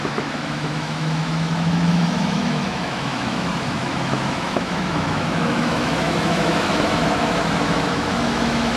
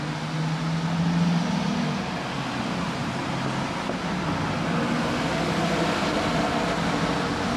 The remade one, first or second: first